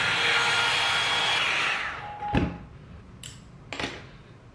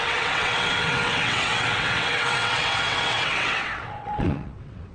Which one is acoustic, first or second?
first